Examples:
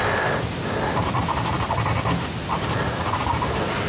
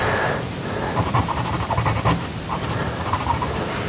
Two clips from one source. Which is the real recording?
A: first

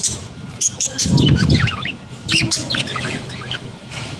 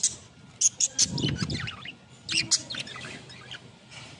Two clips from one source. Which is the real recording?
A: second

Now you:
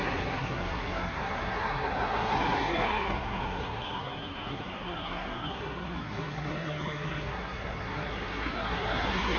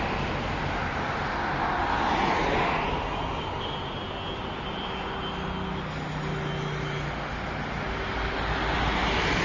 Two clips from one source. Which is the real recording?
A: second